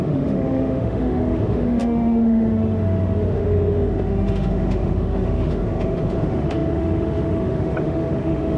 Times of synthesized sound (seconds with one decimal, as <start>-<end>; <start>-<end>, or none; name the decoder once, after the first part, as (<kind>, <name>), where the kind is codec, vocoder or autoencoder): 0.0-8.6 (autoencoder, DAC-VAE)